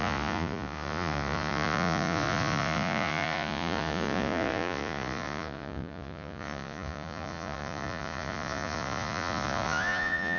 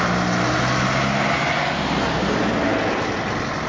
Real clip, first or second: second